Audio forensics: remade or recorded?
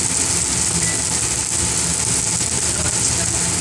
recorded